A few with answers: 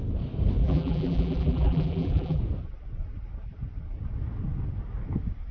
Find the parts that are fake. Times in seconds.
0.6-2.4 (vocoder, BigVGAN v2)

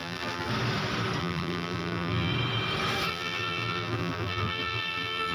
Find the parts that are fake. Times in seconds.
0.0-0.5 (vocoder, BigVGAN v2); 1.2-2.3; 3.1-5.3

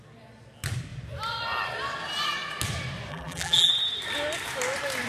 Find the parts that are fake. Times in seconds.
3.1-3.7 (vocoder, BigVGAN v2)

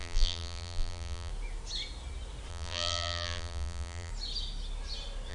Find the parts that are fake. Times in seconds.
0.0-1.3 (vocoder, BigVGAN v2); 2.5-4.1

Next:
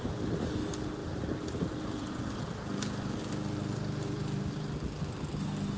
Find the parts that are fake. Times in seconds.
1.0-4.5 (vocoder, BigVGAN v2)